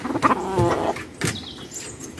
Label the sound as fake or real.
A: real